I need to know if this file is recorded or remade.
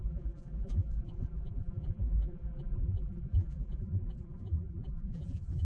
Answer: remade